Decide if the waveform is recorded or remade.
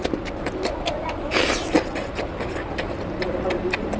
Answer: recorded